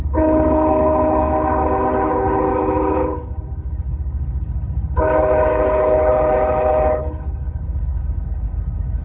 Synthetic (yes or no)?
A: yes